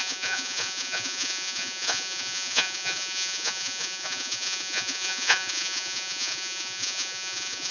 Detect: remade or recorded remade